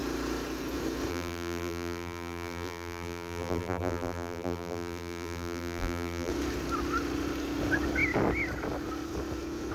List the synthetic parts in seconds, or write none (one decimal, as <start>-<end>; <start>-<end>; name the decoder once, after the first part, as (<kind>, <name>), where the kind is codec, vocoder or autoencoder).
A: 1.1-6.3 (vocoder, BigVGAN v2)